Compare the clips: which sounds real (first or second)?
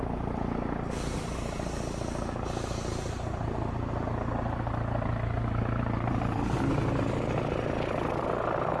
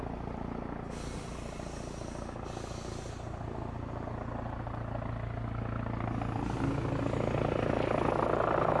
second